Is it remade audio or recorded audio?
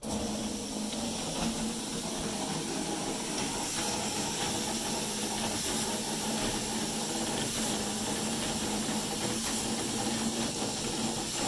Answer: recorded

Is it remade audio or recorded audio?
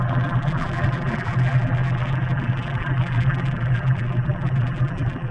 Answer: remade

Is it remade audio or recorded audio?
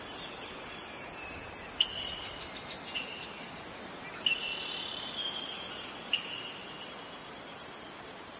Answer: recorded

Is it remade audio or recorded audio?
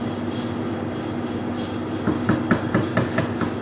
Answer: recorded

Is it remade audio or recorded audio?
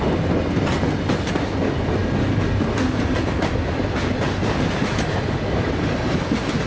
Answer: recorded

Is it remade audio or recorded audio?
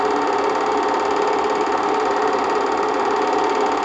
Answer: recorded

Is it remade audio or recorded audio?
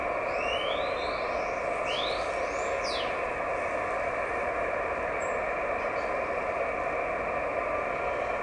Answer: recorded